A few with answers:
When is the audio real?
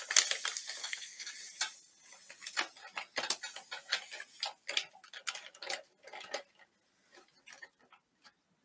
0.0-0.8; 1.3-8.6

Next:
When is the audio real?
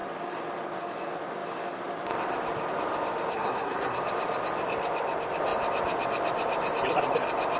0.0-3.3; 4.0-7.6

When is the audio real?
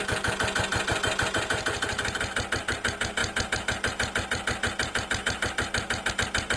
0.0-6.6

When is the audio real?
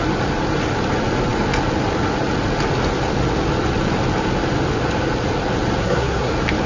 0.0-5.8; 6.3-6.7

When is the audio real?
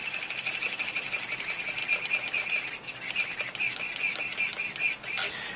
0.0-5.6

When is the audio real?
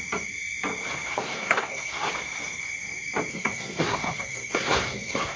0.0-1.1; 2.1-3.3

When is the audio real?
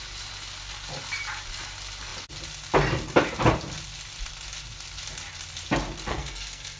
0.0-6.1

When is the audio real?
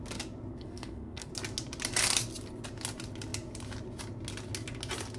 0.0-0.5; 1.3-5.2